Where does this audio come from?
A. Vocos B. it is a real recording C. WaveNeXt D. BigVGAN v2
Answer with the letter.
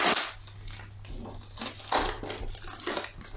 B